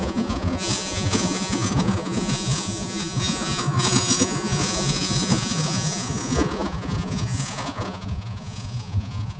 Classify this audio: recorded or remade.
remade